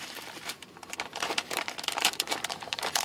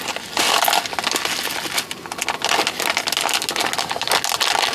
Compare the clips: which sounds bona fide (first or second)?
second